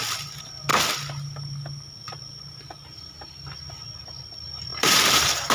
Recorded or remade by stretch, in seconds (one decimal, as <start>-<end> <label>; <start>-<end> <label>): 0.0-4.7 recorded; 4.7-5.5 remade